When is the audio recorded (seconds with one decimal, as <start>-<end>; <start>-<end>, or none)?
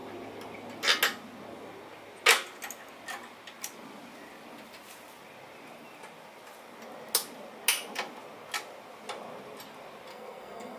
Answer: 0.0-10.1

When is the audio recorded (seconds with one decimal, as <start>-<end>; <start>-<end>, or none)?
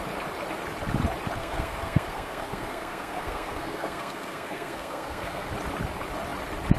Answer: 0.0-1.4; 5.5-6.8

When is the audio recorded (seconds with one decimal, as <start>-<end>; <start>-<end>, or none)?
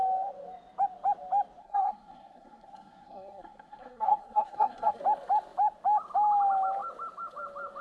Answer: 0.0-1.6; 5.0-7.8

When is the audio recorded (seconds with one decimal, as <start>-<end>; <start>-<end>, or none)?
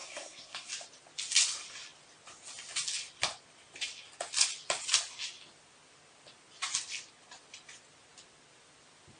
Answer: 0.7-9.2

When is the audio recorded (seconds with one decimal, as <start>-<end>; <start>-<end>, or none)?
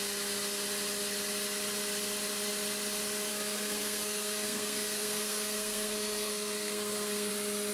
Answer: 0.0-3.3; 7.3-7.7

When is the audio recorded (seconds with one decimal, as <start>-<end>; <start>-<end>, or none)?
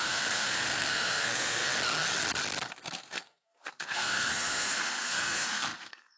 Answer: 1.7-2.7